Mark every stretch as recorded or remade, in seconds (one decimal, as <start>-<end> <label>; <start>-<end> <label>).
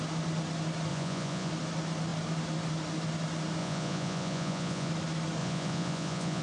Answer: 0.0-0.9 recorded; 0.9-1.5 remade; 1.5-3.6 recorded; 3.6-4.9 remade; 4.9-5.4 recorded; 5.4-6.4 remade